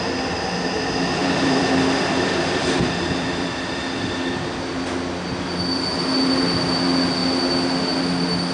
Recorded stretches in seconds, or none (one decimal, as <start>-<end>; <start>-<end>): 0.0-1.2; 3.8-8.5